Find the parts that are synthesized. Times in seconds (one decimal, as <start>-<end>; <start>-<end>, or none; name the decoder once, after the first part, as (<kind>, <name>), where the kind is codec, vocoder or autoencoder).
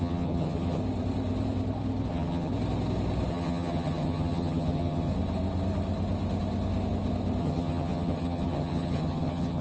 0.0-0.8 (vocoder, HiFi-GAN); 2.1-2.5; 3.3-5.1; 7.4-9.6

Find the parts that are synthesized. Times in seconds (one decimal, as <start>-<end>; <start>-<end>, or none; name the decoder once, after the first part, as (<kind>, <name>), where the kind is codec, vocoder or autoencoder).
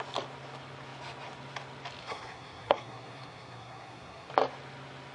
2.0-4.3 (codec, SNAC)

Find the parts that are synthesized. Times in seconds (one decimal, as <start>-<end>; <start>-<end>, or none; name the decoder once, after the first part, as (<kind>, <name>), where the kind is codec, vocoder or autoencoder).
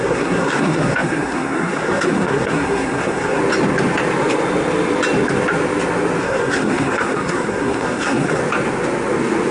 0.0-3.4 (codec, SNAC); 6.2-8.4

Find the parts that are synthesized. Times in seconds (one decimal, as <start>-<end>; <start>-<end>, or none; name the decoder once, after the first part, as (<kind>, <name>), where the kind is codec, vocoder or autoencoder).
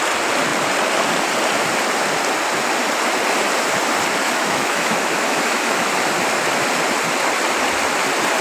4.2-5.9 (autoencoder, DAC-VAE)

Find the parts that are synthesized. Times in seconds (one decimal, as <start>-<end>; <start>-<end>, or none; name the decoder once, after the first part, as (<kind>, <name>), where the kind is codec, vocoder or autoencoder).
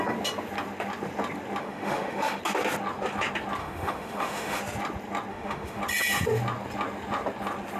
1.6-2.4 (autoencoder, DAC-VAE); 3.6-4.6; 5.3-5.8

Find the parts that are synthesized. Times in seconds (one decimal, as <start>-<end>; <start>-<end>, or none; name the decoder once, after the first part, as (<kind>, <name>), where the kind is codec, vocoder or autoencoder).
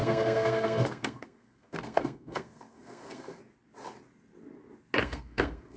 0.0-3.4 (codec, SNAC); 5.0-5.8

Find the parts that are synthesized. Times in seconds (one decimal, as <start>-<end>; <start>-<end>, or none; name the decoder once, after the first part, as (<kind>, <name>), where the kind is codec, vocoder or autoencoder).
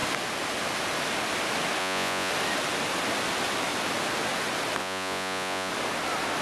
1.8-2.3 (vocoder, Vocos); 4.8-5.7